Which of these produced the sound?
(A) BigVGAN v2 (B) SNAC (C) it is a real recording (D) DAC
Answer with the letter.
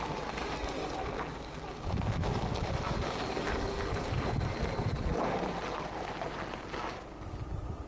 C